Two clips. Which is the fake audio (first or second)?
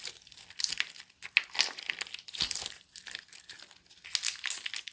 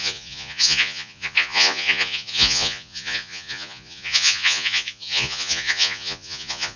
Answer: second